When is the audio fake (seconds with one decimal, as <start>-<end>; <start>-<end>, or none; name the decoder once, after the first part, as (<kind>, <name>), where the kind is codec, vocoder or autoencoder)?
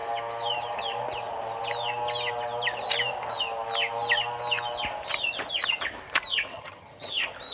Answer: 6.5-7.1 (vocoder, HiFi-GAN)